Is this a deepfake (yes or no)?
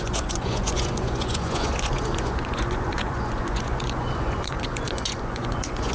yes